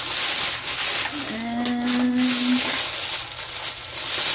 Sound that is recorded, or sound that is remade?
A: recorded